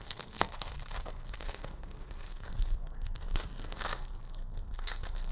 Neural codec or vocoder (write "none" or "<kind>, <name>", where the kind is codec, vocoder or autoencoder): codec, SNAC